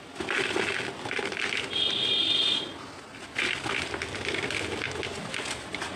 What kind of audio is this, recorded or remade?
recorded